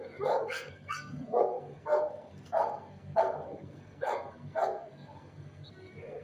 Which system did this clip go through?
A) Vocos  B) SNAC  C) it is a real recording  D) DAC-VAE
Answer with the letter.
B